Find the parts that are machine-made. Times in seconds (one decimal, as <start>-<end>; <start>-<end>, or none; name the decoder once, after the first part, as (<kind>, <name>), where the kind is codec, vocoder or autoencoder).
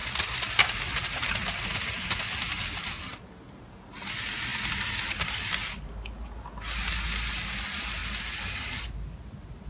none